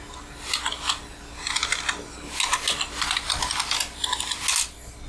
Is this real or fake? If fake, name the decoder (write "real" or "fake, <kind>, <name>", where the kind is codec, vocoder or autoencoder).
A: real